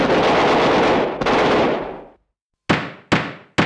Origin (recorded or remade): recorded